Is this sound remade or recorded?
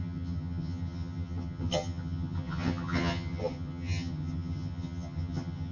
remade